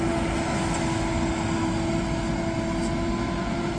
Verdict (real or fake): real